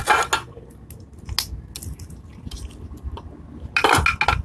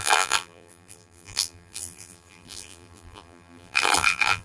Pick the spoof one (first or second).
second